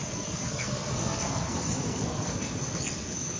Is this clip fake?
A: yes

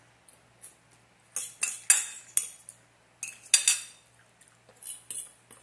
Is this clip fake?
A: no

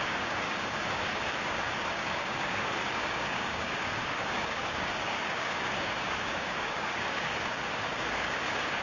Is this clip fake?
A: yes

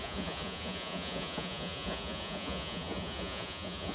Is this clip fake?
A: yes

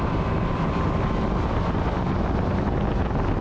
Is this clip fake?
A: no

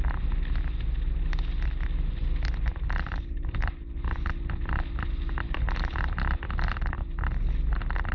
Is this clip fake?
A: no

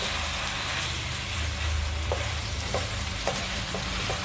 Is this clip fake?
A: yes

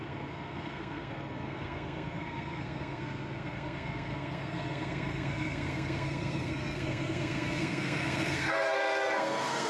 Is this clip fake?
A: yes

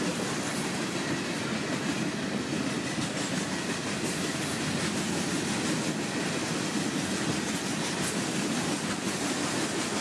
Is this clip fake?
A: no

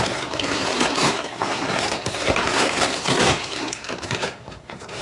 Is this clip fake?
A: yes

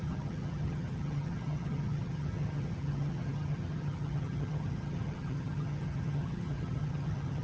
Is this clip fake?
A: yes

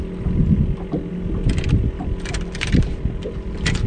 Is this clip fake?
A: no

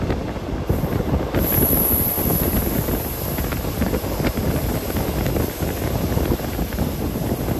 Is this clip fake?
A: no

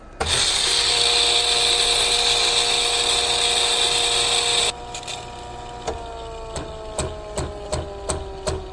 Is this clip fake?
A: no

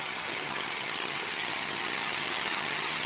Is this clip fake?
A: yes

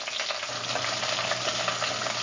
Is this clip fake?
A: no